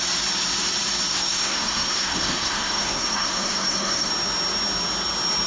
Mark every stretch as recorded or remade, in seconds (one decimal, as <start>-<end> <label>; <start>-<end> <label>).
0.0-1.1 recorded; 1.1-4.1 remade; 4.1-5.5 recorded